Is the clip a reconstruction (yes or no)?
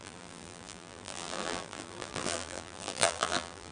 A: yes